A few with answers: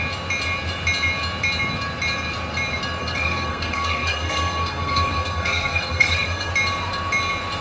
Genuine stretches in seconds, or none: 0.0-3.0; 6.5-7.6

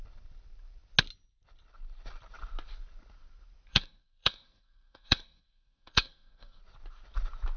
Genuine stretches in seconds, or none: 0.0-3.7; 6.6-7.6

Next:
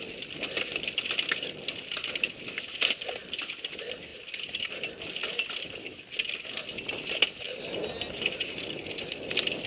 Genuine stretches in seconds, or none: 0.0-9.7